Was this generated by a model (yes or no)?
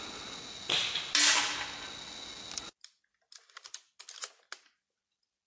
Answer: no